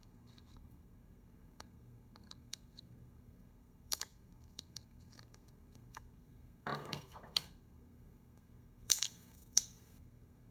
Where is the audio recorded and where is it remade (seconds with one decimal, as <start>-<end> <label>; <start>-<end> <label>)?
0.0-10.5 remade